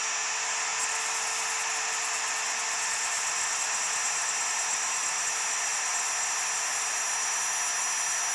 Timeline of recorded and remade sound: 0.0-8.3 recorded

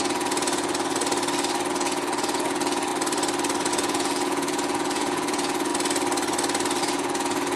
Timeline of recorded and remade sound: 0.0-0.7 remade; 0.7-1.7 recorded; 1.7-2.9 remade; 2.9-3.7 recorded; 3.7-5.7 remade; 5.7-6.8 recorded; 6.8-7.6 remade

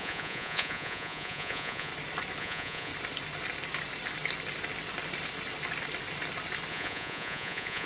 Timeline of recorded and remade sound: 0.0-1.9 remade; 1.9-2.4 recorded; 2.4-2.9 remade; 2.9-6.7 recorded; 6.7-7.9 remade

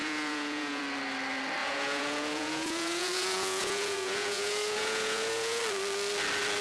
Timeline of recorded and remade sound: 0.0-0.8 remade; 0.8-1.6 recorded; 1.6-5.6 remade; 5.6-6.6 recorded

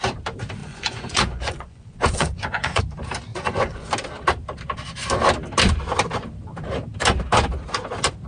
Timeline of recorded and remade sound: 0.0-0.6 recorded; 0.6-2.8 remade; 2.8-3.3 recorded; 3.3-3.9 remade; 3.9-8.3 recorded

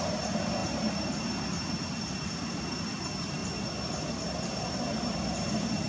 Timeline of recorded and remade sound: 0.0-5.9 recorded